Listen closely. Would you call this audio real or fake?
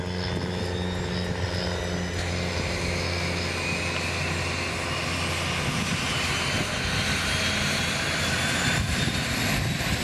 real